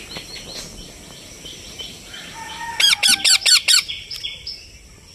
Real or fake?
real